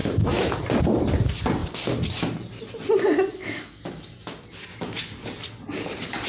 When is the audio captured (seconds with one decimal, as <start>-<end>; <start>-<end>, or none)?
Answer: 0.6-3.3; 3.8-6.3